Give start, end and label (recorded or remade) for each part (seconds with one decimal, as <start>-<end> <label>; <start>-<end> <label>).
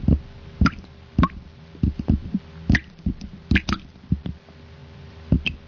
0.0-5.7 recorded